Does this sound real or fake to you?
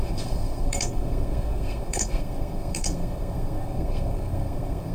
fake